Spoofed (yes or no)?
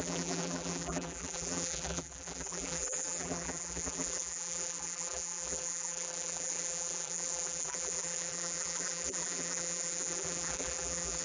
yes